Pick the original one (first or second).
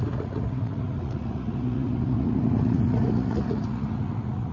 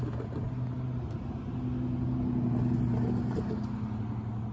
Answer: second